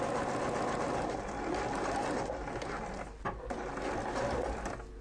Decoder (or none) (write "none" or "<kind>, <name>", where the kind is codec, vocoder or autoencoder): none